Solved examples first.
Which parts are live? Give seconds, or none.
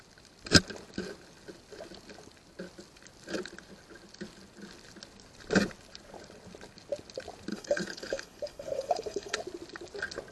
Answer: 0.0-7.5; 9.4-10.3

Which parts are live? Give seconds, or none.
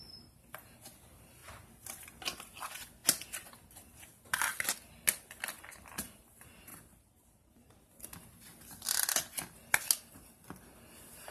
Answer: 0.0-11.3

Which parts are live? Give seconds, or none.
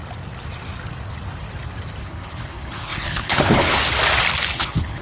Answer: 0.0-2.0; 3.8-4.5